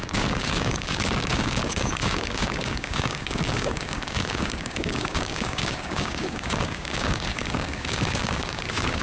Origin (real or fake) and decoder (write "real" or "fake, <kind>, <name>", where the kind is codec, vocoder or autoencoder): fake, codec, DAC